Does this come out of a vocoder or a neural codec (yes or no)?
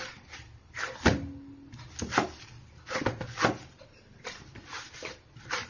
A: no